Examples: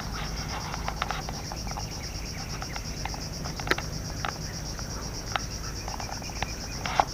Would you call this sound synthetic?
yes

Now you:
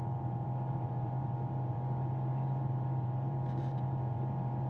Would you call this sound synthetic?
yes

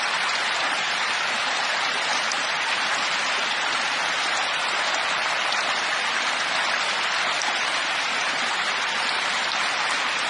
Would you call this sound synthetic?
yes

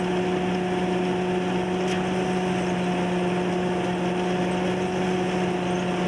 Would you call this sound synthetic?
no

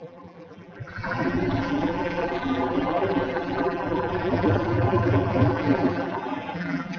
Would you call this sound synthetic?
yes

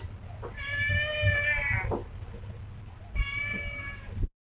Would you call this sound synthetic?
no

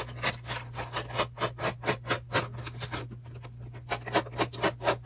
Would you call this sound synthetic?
no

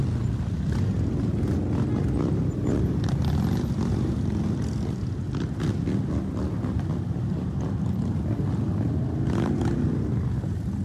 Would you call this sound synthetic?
no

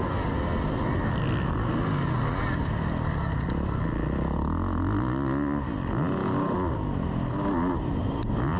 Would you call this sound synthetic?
no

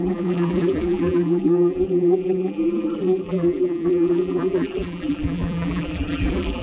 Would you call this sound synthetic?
yes